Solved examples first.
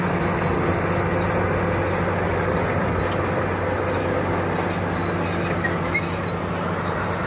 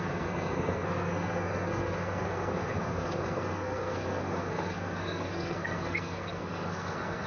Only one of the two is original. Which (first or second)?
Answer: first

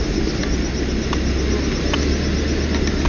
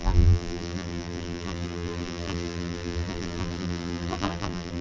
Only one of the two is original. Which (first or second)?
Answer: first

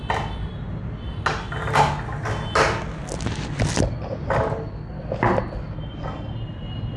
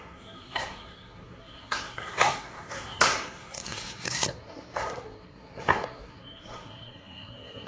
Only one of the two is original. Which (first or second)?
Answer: first